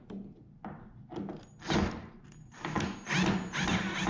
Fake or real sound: real